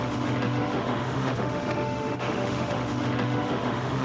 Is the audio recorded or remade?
remade